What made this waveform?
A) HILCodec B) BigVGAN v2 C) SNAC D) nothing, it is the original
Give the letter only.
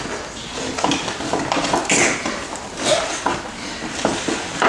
D